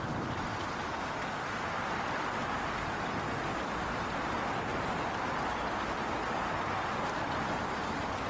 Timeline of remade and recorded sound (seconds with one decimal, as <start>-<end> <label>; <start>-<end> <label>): 0.0-8.3 recorded